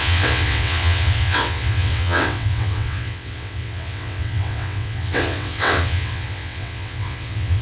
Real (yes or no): no